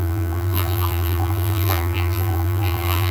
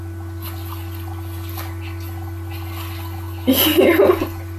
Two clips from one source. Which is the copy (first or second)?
first